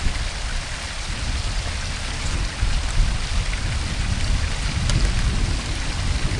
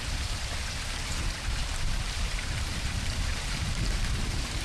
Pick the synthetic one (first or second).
second